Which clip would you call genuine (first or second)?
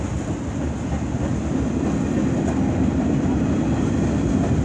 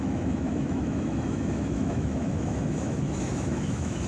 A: first